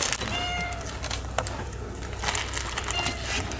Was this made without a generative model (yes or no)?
yes